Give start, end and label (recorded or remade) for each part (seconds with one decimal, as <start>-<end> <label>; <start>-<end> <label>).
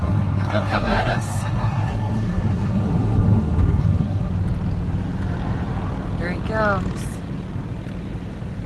0.0-4.3 remade; 4.3-8.7 recorded